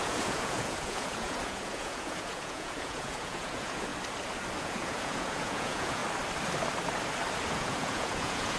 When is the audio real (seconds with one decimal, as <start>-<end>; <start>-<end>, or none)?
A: 3.9-4.6; 6.0-7.5